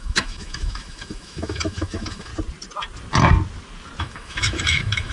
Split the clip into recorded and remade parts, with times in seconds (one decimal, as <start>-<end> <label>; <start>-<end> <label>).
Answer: 0.0-2.3 remade; 2.3-4.0 recorded; 4.0-5.1 remade